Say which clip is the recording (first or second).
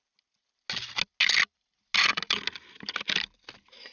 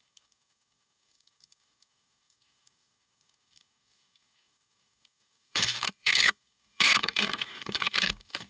first